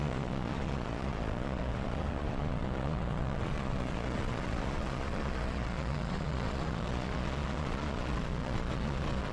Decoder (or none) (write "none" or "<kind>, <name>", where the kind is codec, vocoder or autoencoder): vocoder, Vocos